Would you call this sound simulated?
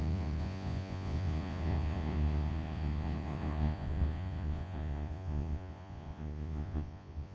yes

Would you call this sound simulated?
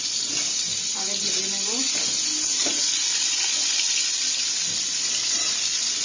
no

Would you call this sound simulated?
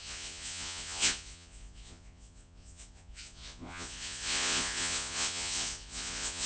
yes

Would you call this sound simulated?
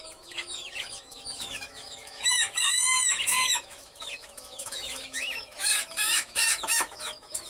yes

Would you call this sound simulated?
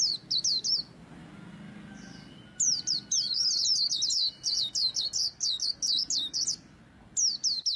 no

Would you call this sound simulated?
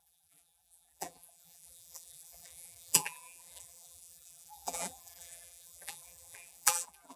yes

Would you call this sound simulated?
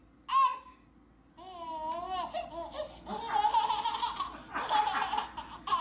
no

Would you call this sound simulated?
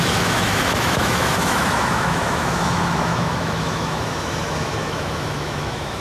yes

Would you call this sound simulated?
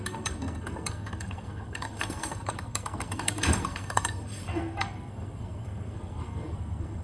yes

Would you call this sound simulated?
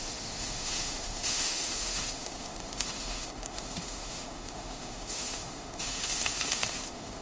yes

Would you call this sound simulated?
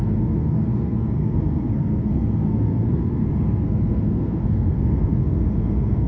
yes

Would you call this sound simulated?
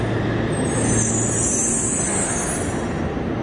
no